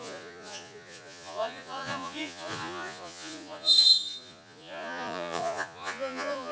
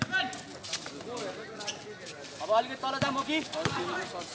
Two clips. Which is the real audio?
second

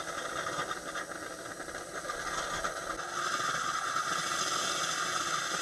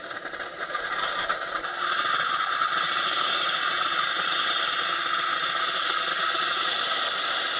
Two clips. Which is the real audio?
first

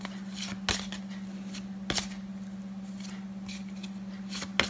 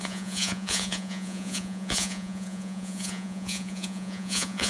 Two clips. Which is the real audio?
first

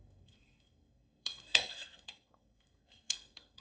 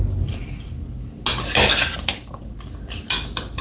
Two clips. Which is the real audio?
second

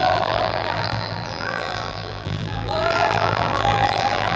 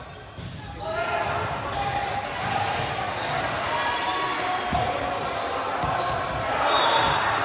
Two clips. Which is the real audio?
second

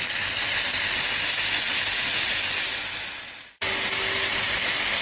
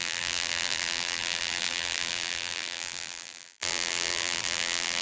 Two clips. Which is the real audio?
first